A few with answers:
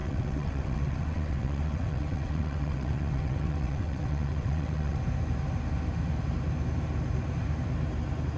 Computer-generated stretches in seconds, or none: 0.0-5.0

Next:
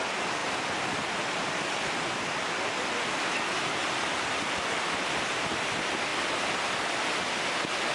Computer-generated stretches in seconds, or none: 0.4-3.5; 6.1-7.2

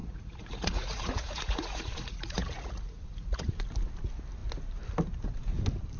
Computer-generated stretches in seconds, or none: 0.0-3.6

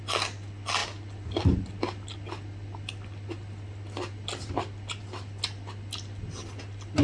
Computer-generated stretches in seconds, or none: none

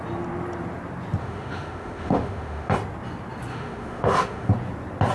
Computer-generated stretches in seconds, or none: 1.2-2.7; 3.5-4.5

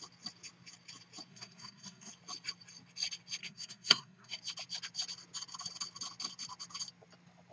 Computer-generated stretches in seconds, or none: 1.3-2.1; 3.4-4.4

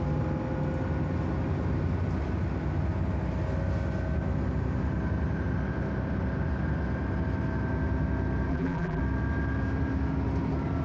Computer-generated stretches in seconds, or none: 8.5-9.0

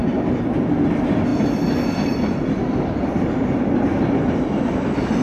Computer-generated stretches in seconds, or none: none